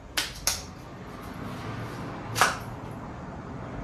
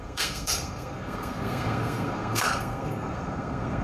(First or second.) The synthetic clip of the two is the second